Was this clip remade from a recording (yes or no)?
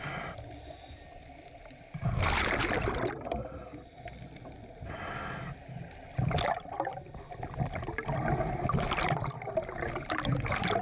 no